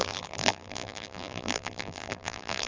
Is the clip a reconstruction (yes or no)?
yes